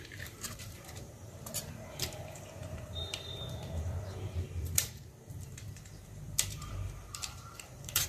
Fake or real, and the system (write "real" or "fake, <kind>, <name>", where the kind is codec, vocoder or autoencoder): fake, vocoder, BigVGAN v2